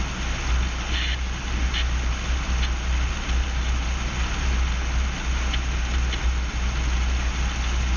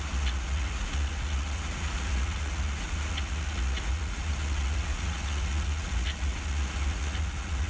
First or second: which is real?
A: first